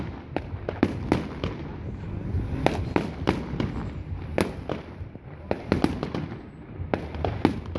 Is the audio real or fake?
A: real